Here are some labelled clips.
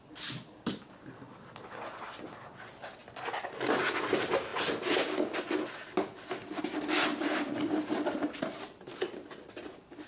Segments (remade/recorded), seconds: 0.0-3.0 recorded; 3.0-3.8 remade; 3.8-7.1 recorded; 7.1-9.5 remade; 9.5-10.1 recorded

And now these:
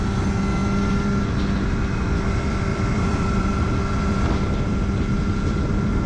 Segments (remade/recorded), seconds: 0.0-2.7 recorded; 2.7-3.5 remade; 3.5-6.1 recorded